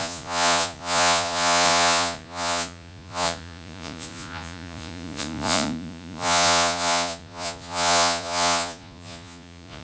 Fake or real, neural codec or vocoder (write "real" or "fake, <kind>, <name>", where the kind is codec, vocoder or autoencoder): fake, vocoder, Vocos